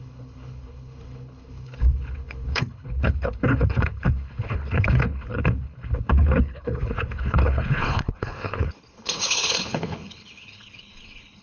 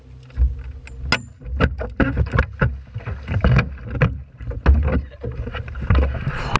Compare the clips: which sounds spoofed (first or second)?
first